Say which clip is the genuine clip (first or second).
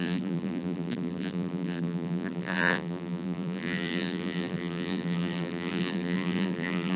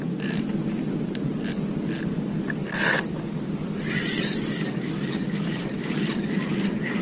second